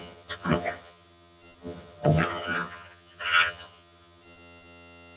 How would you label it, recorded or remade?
remade